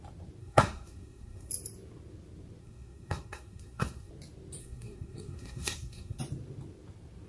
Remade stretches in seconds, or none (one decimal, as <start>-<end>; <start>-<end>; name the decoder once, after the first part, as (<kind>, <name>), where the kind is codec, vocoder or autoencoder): 0.4-1.5 (codec, SNAC); 2.6-4.1; 4.6-6.2